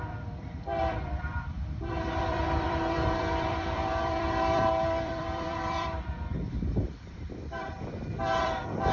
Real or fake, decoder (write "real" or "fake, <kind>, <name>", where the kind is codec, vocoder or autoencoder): fake, vocoder, BigVGAN v2